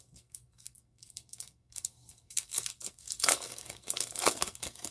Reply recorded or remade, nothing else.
remade